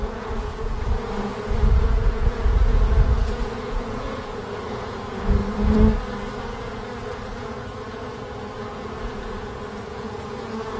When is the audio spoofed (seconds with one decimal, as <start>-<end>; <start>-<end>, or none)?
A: 0.0-5.4; 6.4-10.8